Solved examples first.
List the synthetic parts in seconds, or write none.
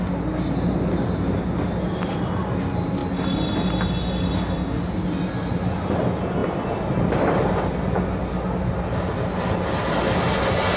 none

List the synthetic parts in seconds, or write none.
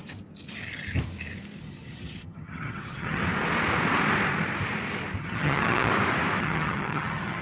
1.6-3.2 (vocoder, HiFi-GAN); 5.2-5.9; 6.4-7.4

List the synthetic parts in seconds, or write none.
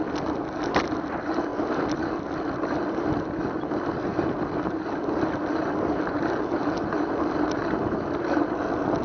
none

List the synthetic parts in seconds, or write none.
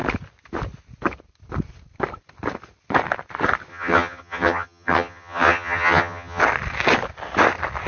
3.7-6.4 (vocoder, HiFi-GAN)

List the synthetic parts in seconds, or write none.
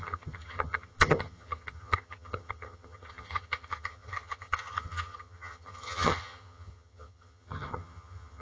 0.0-8.4 (vocoder, HiFi-GAN)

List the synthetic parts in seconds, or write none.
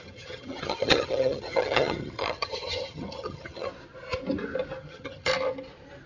0.0-3.7 (vocoder, HiFi-GAN); 4.8-5.3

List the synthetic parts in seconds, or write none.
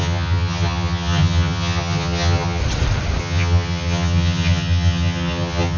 0.0-2.6 (vocoder, HiFi-GAN); 3.2-5.8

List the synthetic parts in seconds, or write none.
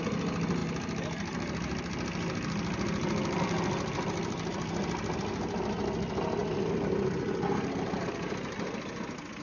none